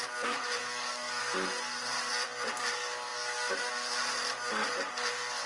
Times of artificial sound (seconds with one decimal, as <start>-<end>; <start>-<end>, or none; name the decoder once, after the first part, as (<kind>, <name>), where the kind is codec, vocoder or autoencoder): 0.6-1.2 (codec, DAC)